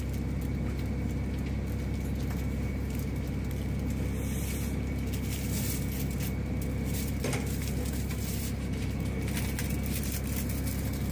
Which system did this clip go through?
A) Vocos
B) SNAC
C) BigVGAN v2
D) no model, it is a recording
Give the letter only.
D